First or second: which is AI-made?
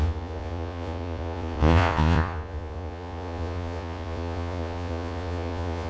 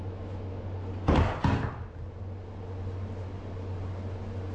first